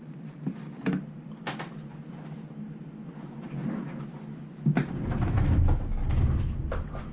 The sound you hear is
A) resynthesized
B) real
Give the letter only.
B